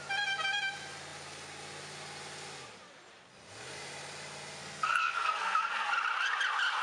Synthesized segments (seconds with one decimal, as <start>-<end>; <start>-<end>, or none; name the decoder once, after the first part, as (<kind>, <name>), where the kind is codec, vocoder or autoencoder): 4.6-5.9 (codec, SNAC)